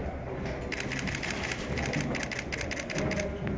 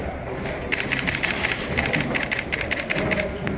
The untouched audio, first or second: first